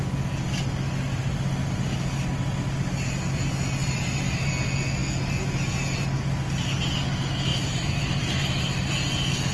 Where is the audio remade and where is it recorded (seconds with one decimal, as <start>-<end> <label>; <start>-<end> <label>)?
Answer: 0.0-3.8 recorded; 3.8-4.5 remade; 4.5-7.5 recorded; 7.5-8.9 remade; 8.9-9.5 recorded